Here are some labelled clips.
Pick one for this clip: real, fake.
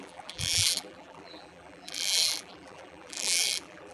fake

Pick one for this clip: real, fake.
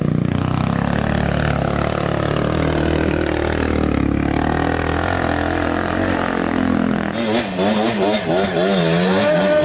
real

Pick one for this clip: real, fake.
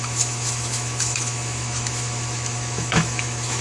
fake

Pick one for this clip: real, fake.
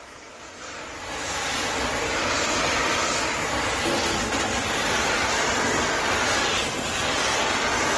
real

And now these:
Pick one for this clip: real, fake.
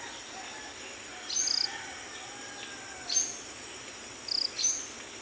real